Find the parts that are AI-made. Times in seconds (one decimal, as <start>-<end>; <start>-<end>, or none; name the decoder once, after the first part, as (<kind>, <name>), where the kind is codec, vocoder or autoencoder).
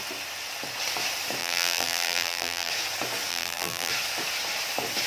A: 1.4-2.7 (vocoder, BigVGAN v2); 3.3-3.9